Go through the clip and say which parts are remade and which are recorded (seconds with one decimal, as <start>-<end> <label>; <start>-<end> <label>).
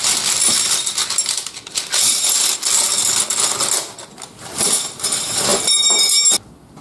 0.0-6.8 recorded